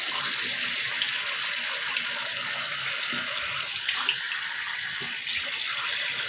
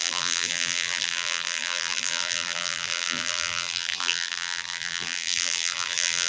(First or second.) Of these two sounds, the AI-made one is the second